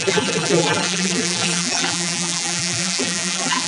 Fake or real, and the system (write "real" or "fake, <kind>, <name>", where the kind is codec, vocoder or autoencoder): fake, vocoder, BigVGAN v2